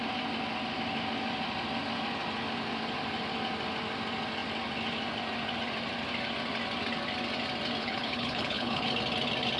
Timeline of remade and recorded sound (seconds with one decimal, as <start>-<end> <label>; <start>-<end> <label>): 0.0-7.8 recorded; 7.8-8.9 remade; 8.9-9.6 recorded